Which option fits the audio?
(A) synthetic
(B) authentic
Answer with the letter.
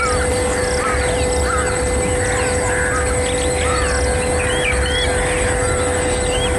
B